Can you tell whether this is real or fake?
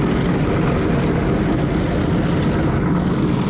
real